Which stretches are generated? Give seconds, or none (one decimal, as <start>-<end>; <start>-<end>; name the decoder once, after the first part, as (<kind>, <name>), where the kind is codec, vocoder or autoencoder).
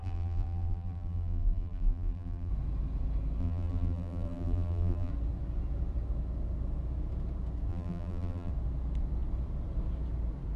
0.0-2.5 (vocoder, BigVGAN v2); 3.4-5.1; 7.7-8.5